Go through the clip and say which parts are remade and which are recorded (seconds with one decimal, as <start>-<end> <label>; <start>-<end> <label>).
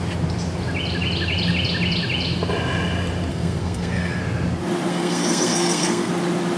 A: 0.0-3.3 recorded; 3.3-4.2 remade; 4.2-4.9 recorded; 4.9-6.1 remade; 6.1-6.6 recorded